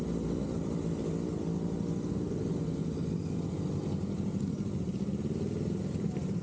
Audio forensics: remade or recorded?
recorded